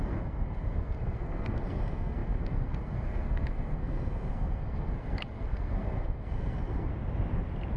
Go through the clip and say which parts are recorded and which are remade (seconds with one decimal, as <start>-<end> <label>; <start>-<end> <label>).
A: 0.0-6.9 remade; 6.9-7.8 recorded